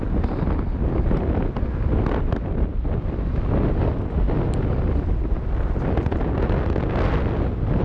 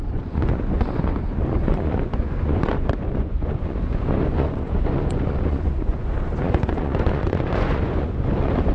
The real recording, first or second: first